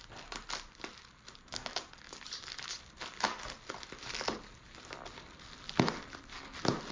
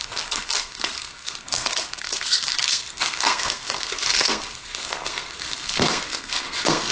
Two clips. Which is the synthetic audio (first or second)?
second